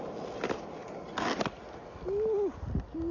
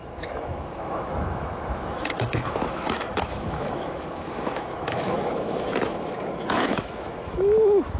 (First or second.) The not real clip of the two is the second